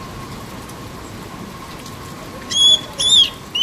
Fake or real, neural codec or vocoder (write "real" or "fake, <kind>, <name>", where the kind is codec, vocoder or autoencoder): real